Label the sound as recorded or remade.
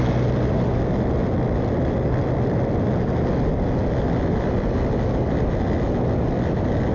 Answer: recorded